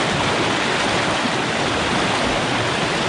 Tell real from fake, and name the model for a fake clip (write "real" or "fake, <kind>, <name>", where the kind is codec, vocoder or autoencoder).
real